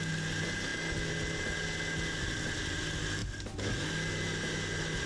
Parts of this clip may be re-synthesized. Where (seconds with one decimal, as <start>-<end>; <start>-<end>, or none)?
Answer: none